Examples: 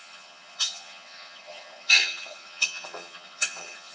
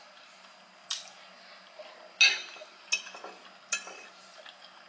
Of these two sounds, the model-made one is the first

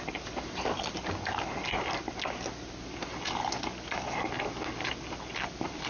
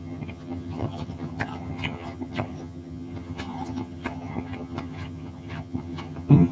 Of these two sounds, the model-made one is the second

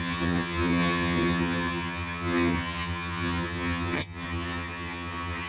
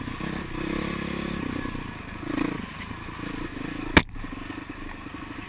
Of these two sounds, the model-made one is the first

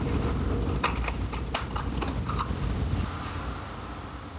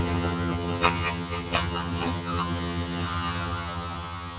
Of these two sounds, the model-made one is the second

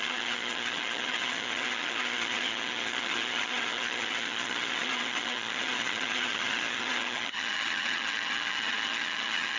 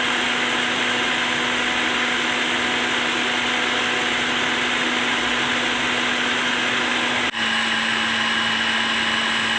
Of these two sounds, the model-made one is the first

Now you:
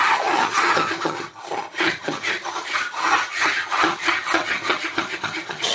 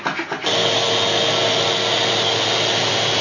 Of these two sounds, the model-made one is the first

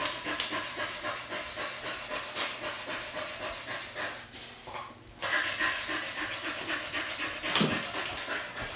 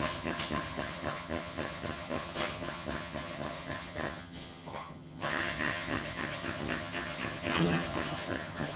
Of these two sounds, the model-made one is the second